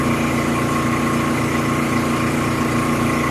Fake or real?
real